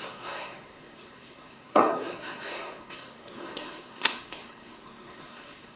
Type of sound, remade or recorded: remade